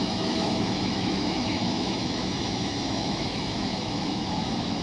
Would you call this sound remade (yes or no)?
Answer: yes